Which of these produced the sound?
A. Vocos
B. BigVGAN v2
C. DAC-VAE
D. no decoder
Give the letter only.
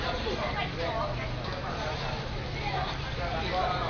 D